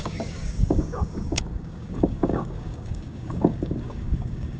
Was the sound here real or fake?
fake